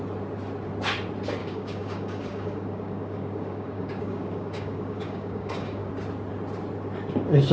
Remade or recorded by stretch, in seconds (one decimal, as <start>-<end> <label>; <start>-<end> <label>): 0.0-1.4 recorded; 1.4-5.9 remade; 5.9-7.5 recorded